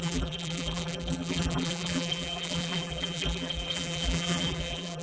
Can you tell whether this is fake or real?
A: fake